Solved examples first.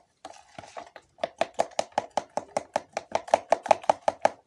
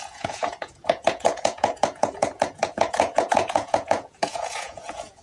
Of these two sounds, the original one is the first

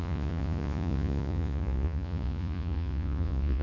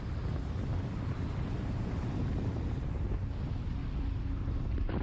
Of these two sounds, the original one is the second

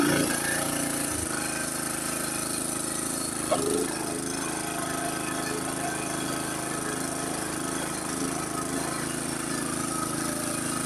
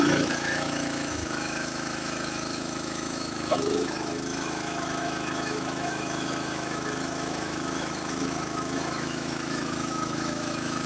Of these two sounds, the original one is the first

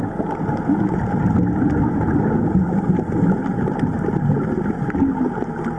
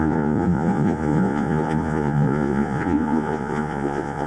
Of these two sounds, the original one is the first